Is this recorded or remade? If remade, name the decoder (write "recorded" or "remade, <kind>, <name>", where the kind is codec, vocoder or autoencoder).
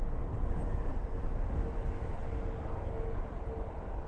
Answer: recorded